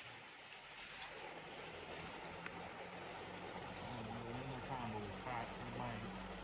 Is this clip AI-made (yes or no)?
no